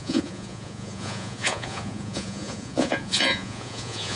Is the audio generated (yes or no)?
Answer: yes